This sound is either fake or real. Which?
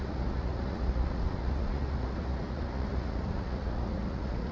fake